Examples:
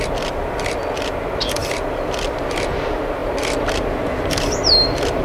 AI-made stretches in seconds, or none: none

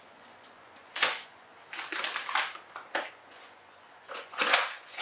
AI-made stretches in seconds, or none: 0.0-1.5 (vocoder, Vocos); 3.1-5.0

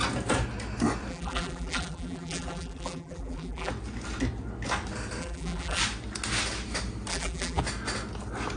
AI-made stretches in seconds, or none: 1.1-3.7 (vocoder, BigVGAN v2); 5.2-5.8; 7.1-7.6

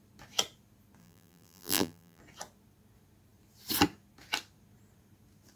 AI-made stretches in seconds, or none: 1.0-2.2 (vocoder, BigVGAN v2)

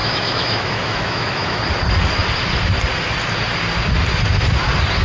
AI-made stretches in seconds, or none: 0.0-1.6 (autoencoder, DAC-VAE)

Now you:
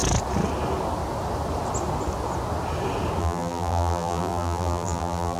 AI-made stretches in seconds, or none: 3.2-5.4 (vocoder, BigVGAN v2)

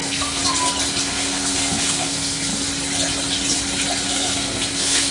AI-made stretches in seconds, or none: 0.0-0.4 (codec, SNAC); 1.0-2.5; 4.1-5.1

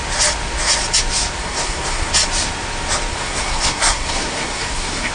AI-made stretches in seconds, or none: 1.4-2.1 (codec, SNAC); 3.1-5.1